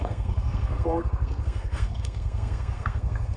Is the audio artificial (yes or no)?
yes